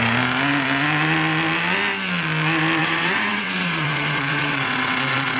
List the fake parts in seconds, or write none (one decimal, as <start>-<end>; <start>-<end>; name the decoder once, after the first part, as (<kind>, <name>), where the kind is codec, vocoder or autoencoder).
2.8-5.4 (vocoder, WaveNeXt)